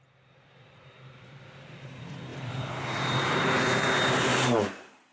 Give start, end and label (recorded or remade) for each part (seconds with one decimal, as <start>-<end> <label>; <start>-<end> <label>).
0.0-4.3 remade; 4.3-5.1 recorded